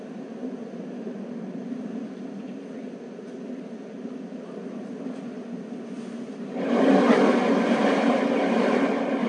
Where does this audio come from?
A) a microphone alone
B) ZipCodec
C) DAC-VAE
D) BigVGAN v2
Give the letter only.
A